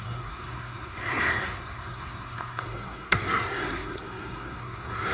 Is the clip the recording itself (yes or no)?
no